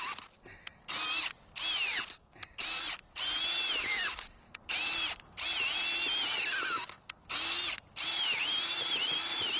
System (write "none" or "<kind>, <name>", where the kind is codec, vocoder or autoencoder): none